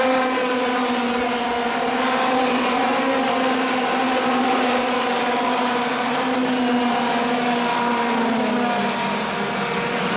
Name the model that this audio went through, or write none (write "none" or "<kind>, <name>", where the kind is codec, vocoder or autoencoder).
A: none